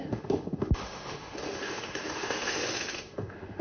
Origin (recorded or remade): remade